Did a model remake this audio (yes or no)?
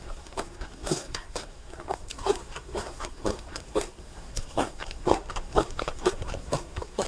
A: yes